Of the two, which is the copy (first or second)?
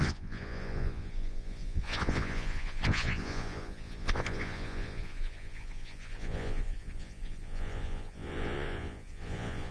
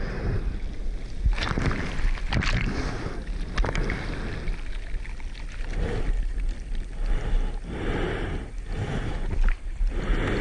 first